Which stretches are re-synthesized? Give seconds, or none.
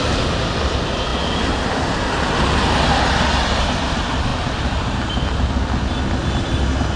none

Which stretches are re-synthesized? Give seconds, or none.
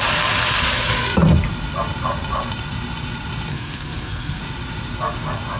3.5-4.4 (codec, SNAC)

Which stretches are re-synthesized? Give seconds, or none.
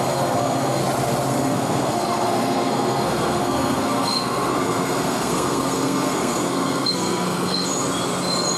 0.0-0.8 (codec, SNAC); 1.3-7.7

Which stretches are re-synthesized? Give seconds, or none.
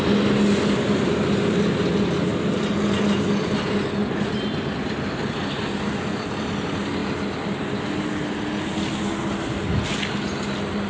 none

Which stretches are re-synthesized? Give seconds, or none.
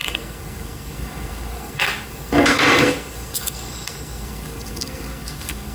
0.0-5.7 (codec, SNAC)